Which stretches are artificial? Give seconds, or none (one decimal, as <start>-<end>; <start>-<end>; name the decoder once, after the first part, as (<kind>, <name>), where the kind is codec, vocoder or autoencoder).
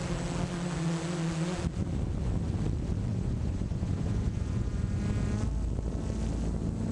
3.1-5.0 (vocoder, Vocos)